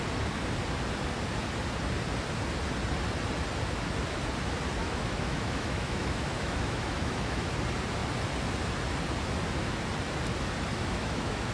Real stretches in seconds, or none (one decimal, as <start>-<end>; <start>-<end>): 0.0-4.8; 7.5-10.8